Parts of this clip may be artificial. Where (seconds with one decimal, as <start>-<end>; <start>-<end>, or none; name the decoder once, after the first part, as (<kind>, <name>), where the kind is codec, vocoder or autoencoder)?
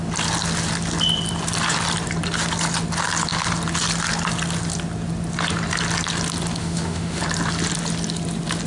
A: 6.6-7.2 (autoencoder, DAC-VAE)